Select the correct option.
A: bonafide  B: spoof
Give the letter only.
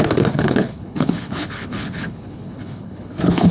B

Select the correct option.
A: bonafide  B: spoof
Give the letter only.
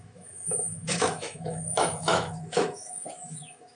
B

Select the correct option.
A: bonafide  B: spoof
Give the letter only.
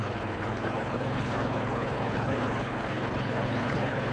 B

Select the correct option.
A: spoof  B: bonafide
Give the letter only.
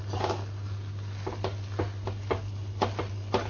B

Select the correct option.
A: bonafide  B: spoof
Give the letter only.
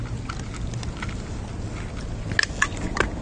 A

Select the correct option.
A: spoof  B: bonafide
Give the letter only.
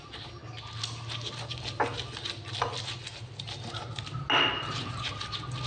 B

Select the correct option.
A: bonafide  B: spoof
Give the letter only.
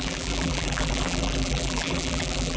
B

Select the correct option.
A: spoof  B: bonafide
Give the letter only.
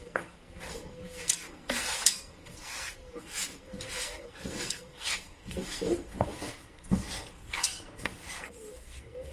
A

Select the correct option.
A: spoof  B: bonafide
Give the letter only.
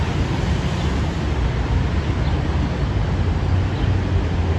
B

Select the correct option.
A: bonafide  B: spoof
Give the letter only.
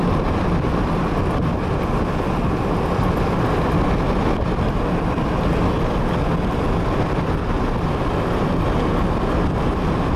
A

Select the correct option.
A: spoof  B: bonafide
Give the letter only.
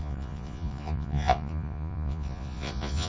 A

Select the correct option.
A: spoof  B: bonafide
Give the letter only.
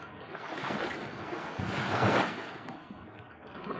A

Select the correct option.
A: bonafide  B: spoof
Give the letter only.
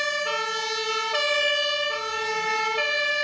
A